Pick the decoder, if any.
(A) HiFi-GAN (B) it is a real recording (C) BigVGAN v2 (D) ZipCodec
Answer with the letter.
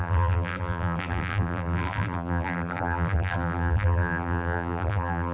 C